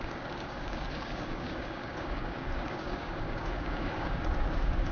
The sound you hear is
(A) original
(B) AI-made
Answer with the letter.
B